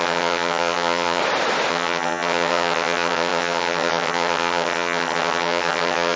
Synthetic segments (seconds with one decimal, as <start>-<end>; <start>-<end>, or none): 0.0-1.2; 1.7-6.2